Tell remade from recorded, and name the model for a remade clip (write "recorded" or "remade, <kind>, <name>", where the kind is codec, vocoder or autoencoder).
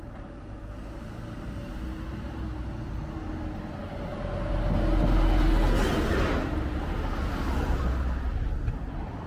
recorded